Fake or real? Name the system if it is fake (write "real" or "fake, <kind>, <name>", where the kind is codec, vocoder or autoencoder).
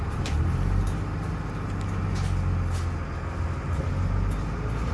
real